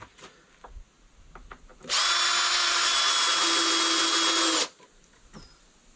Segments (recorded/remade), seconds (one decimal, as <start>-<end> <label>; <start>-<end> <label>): 0.0-6.0 recorded